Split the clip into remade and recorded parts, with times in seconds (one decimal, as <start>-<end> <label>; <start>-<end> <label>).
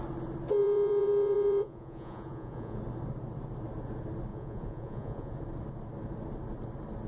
0.0-0.6 recorded; 0.6-2.8 remade; 2.8-4.3 recorded; 4.3-5.3 remade; 5.3-7.1 recorded